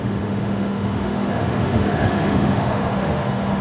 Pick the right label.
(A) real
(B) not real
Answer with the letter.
B